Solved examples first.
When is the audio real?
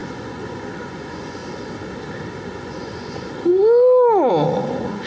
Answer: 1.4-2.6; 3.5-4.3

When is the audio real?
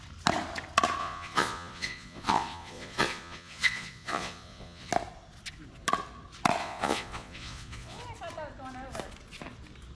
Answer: 0.0-1.0; 4.9-6.6; 8.0-9.9